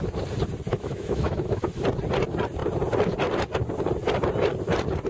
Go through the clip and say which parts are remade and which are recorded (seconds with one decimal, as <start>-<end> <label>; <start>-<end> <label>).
0.0-0.7 recorded; 0.7-1.7 remade; 1.7-5.1 recorded